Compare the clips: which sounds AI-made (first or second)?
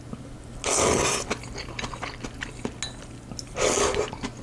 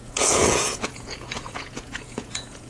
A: second